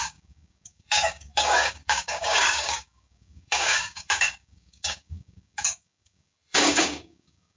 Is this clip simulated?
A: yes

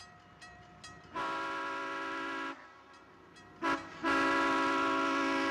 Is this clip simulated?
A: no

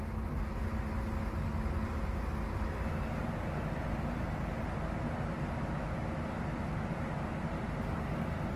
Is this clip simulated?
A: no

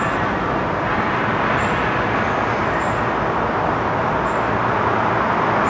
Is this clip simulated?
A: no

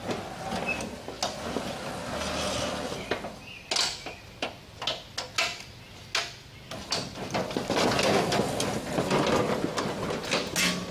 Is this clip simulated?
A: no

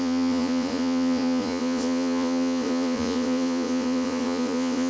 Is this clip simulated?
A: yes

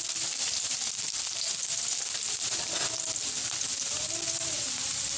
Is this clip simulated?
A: no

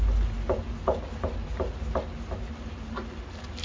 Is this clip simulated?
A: no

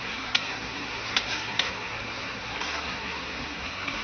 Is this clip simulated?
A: yes